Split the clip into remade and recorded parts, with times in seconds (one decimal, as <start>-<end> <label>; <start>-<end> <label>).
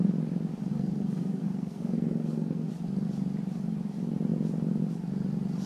0.0-0.7 recorded; 0.7-2.7 remade; 2.7-5.7 recorded